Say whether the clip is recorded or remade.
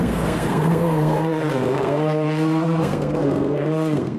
remade